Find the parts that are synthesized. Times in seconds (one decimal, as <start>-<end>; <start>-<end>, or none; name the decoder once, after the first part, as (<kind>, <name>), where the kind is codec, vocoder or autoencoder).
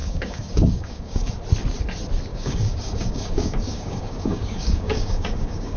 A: 0.0-1.3 (codec, DAC); 2.3-5.8